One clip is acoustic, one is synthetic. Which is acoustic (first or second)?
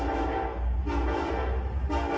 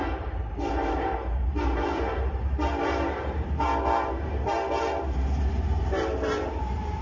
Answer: first